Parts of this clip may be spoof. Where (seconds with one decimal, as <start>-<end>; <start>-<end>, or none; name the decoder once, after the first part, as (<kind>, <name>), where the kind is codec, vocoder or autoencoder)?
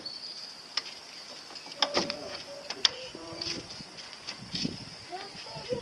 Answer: 2.2-5.8 (vocoder, Vocos)